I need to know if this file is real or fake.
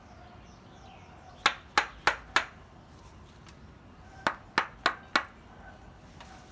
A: real